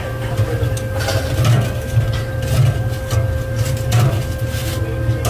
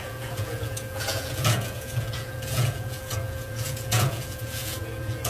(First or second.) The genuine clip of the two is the first